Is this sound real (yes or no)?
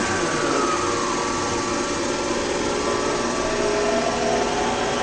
yes